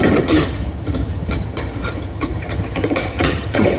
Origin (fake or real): fake